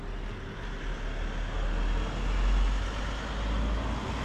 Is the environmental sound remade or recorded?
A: recorded